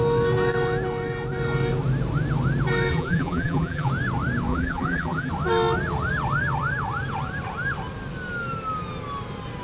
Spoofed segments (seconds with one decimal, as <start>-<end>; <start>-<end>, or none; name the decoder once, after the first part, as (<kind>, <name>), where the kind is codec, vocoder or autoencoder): 2.9-3.9 (vocoder, BigVGAN v2); 4.5-5.3